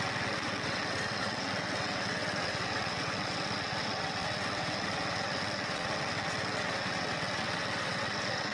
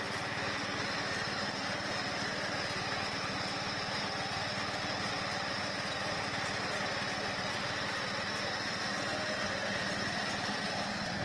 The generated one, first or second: first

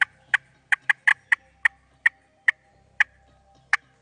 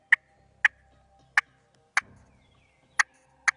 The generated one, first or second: first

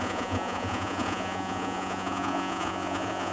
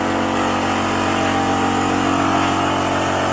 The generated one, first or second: first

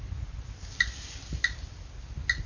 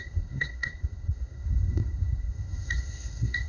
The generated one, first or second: second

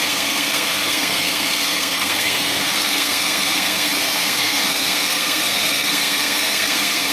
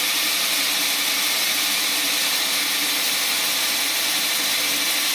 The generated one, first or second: first